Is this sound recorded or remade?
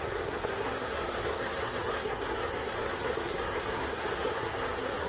remade